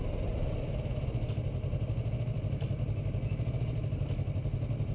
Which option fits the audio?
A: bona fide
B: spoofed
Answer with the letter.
A